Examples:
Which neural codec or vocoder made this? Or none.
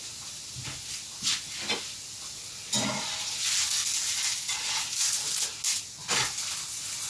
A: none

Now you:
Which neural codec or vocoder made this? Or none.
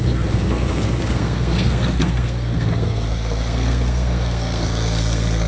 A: codec, SNAC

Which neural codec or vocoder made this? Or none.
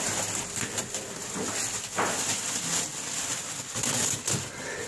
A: none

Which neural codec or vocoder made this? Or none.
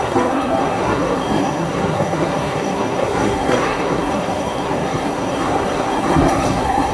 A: codec, SNAC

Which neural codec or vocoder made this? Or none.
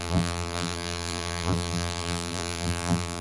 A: vocoder, BigVGAN v2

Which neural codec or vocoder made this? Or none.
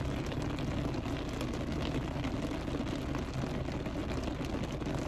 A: none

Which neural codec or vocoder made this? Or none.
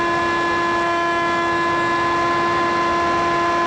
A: none